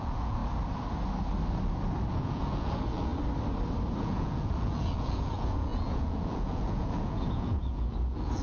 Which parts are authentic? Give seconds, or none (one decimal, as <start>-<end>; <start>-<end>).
0.4-2.1; 3.1-4.0